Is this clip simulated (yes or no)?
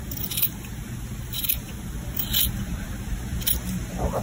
no